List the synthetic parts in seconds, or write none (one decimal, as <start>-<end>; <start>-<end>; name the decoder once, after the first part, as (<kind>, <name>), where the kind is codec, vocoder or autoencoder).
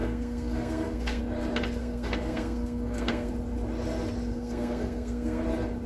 0.0-1.2 (codec, SNAC); 1.8-3.3; 4.3-5.4